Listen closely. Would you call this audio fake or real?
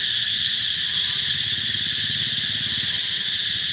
real